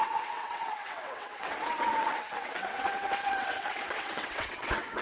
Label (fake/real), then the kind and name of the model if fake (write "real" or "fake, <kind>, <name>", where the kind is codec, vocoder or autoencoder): fake, vocoder, WaveNeXt